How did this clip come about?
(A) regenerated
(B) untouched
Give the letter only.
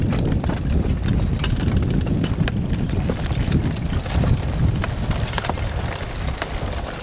B